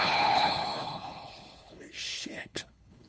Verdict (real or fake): fake